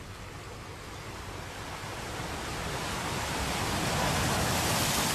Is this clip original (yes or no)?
yes